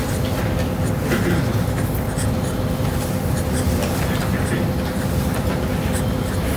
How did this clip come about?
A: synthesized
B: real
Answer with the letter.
B